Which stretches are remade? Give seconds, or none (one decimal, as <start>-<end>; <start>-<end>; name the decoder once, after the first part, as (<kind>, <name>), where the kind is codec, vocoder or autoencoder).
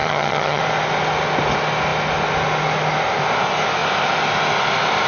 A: 0.0-0.6 (vocoder, HiFi-GAN)